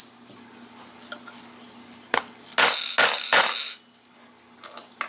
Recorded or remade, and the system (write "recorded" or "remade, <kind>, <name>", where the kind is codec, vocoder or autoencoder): recorded